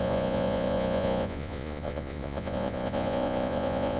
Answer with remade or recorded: remade